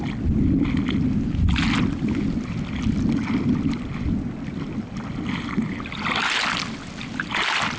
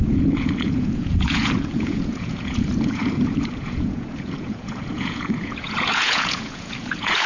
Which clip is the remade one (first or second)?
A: second